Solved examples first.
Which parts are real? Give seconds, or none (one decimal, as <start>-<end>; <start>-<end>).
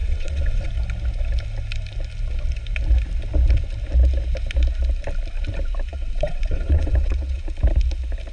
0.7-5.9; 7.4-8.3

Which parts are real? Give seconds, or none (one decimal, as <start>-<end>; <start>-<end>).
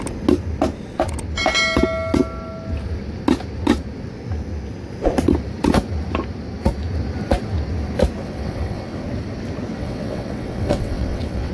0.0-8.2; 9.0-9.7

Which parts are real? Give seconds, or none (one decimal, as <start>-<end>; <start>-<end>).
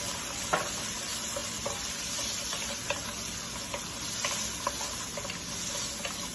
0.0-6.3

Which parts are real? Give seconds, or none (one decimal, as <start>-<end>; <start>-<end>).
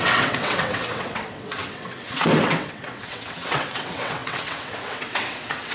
none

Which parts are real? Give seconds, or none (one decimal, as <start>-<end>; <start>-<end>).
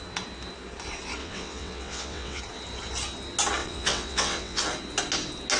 0.0-1.2; 2.4-3.6; 4.6-5.6